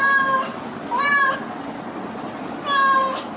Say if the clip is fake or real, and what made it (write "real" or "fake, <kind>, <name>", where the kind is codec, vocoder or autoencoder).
real